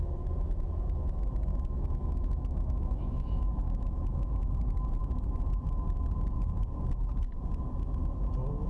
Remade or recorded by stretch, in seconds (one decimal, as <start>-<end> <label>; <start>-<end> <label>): 0.0-1.5 recorded; 1.5-4.5 remade; 4.5-8.7 recorded